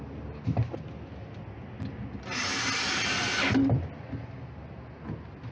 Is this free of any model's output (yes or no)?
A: yes